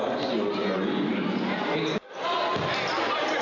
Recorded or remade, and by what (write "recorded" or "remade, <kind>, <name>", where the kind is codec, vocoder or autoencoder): recorded